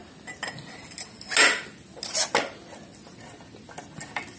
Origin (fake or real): real